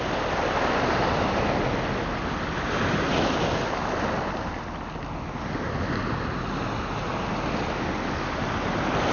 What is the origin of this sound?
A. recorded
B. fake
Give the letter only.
A